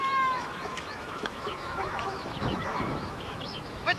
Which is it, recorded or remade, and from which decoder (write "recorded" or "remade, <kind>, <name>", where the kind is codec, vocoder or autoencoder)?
remade, autoencoder, DAC-VAE